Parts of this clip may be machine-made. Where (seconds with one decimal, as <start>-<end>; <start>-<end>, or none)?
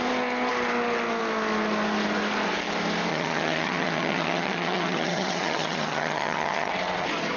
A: 3.1-6.7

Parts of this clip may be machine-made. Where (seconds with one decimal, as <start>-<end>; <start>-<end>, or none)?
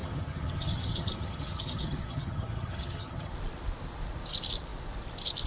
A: 0.0-3.3